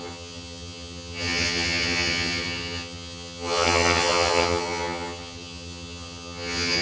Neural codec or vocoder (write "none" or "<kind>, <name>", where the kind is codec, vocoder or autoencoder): vocoder, HiFi-GAN